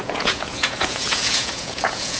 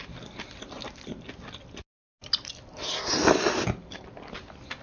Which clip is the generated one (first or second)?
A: first